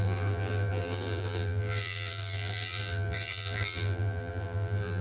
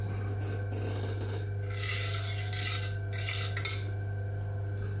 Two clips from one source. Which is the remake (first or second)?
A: first